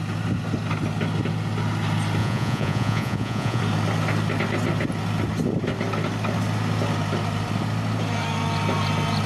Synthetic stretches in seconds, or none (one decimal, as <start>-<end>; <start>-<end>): 2.2-3.6